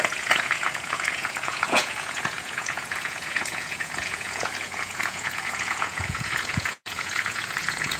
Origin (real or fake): fake